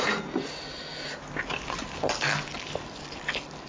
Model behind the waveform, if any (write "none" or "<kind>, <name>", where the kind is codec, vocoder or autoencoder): none